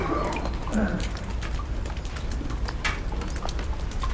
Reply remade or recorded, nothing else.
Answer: recorded